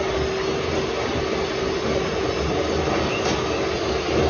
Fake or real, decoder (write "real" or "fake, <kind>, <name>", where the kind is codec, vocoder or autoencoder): real